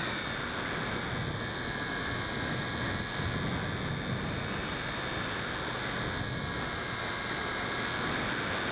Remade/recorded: recorded